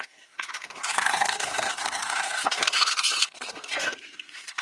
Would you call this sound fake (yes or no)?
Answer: yes